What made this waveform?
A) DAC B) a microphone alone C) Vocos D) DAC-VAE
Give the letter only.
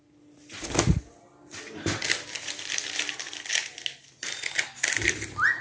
B